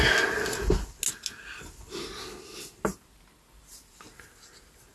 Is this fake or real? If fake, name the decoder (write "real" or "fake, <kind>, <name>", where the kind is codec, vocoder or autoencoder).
real